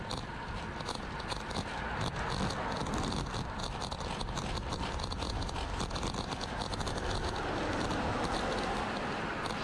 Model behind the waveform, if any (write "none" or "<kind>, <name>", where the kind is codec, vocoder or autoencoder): none